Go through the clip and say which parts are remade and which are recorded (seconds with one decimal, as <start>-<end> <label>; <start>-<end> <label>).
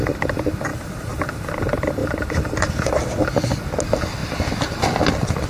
0.0-2.0 recorded; 2.0-2.7 remade; 2.7-5.5 recorded